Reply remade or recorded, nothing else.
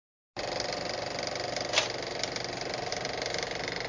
recorded